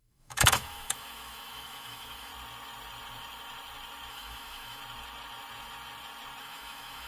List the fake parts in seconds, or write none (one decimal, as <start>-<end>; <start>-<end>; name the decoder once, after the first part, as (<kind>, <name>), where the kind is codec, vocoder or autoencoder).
0.0-2.3 (autoencoder, DAC-VAE); 4.1-4.8; 6.4-7.1